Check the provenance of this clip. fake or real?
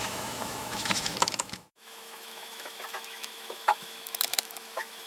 fake